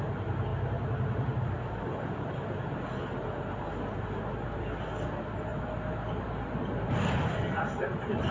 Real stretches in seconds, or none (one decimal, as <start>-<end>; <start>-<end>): 0.0-8.3